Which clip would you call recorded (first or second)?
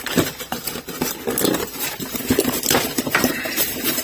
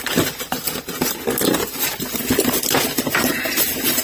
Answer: second